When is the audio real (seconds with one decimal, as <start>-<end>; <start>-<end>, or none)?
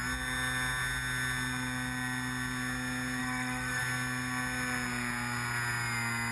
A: 0.0-3.2; 3.8-6.3